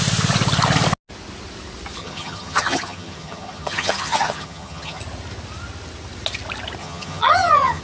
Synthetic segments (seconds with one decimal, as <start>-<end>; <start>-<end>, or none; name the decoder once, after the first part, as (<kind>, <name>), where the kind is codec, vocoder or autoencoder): 2.0-5.0 (vocoder, HiFi-GAN); 6.8-7.8